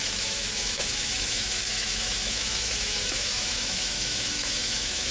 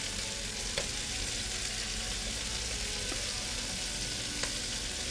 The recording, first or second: second